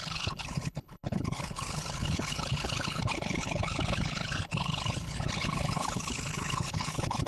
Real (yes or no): no